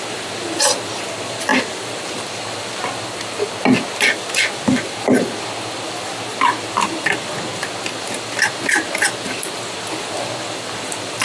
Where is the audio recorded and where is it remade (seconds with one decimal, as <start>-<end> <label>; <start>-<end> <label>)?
0.0-11.2 recorded